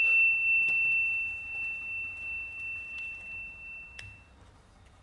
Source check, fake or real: real